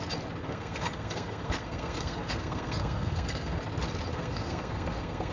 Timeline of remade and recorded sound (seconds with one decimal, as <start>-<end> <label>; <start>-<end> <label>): 0.0-0.4 recorded; 0.4-3.6 remade; 3.6-4.1 recorded; 4.1-5.3 remade